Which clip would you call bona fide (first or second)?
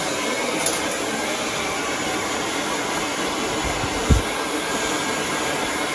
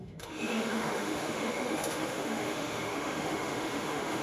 first